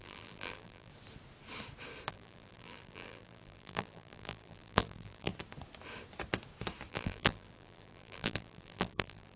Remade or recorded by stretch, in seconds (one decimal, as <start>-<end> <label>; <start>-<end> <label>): 0.0-0.9 remade; 0.9-2.1 recorded; 2.1-5.3 remade; 5.3-6.9 recorded; 6.9-9.4 remade